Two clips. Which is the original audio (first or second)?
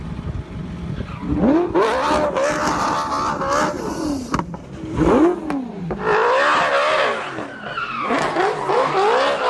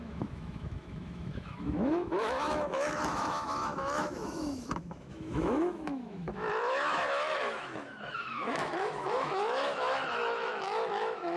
first